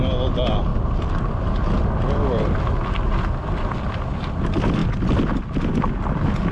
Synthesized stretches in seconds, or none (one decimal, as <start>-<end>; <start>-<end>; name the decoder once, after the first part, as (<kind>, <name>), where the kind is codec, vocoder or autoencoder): none